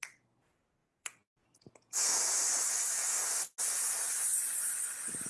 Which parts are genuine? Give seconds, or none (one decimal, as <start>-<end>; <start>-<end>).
0.0-0.8; 2.4-5.3